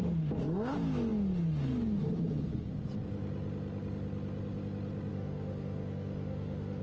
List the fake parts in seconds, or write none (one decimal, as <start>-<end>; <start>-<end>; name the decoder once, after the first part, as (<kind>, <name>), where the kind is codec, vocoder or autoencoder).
5.1-6.8 (autoencoder, DAC-VAE)